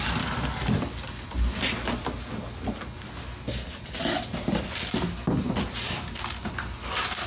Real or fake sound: real